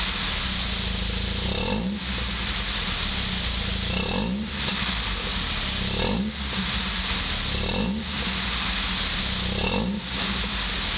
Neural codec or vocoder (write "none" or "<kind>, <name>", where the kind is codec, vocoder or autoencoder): none